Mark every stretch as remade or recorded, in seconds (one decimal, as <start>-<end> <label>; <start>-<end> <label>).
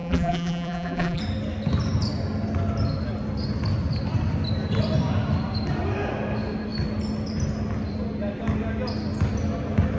0.0-1.2 remade; 1.2-10.0 recorded